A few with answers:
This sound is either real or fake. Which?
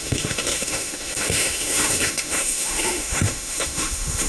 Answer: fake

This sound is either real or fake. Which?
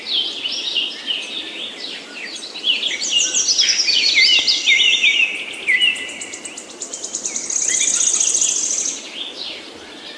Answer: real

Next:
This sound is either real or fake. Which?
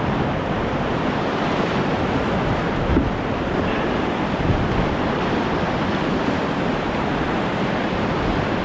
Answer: real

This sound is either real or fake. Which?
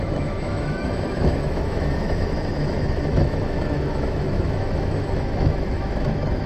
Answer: fake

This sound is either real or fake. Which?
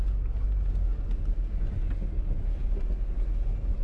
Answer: real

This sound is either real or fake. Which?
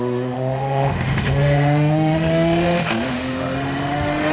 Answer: fake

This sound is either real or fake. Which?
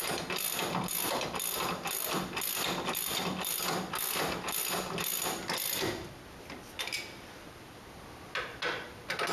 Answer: real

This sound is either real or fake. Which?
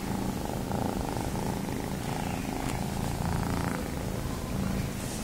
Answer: real